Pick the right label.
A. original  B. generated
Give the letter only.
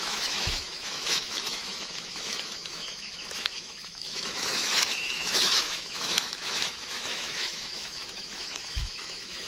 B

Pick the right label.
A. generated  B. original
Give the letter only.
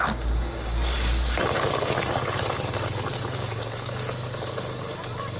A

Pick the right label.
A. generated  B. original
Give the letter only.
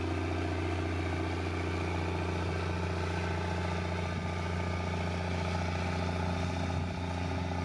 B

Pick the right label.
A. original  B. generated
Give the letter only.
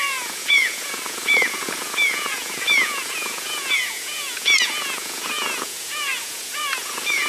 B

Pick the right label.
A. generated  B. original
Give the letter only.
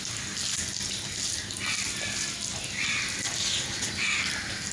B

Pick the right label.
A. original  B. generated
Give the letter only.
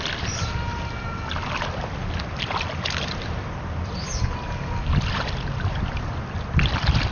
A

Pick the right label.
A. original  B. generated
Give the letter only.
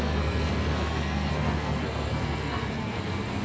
B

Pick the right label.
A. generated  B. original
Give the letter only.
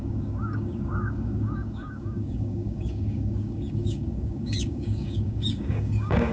A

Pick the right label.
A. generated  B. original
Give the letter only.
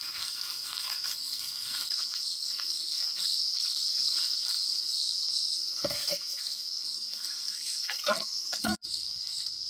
A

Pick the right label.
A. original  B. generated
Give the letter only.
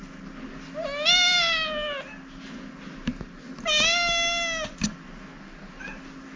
A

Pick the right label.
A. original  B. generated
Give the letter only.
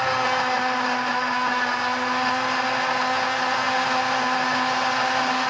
A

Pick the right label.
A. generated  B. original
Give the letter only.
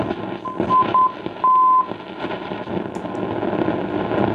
B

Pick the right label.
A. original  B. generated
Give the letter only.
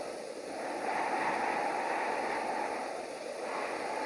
A